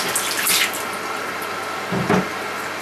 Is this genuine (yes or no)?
yes